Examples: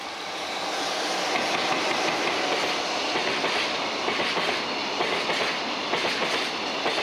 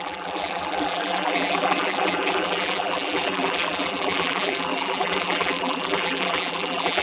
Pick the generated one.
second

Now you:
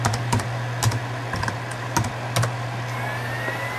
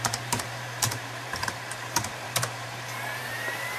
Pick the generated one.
second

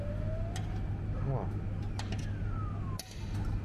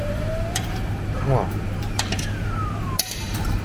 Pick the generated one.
second